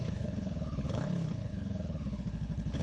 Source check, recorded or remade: remade